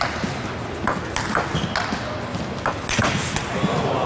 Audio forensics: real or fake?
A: real